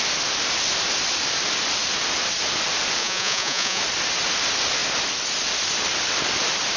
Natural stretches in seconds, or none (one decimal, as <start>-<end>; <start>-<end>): 0.0-3.0; 3.8-6.8